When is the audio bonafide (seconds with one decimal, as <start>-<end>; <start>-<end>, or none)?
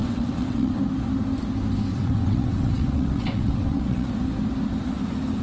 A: 0.8-1.9; 4.1-5.4